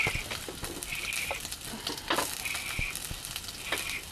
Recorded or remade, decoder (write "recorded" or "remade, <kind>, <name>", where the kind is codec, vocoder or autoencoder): recorded